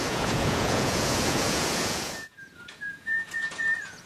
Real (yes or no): no